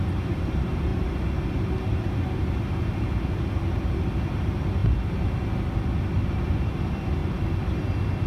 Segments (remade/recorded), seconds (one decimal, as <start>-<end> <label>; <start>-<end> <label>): 0.0-0.9 remade; 0.9-4.1 recorded; 4.1-4.8 remade; 4.8-6.0 recorded; 6.0-7.2 remade; 7.2-8.3 recorded